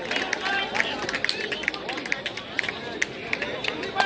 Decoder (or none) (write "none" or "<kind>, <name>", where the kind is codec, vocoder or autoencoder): none